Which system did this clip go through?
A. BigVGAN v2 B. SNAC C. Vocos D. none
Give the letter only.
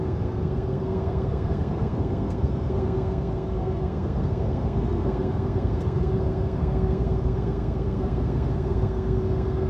B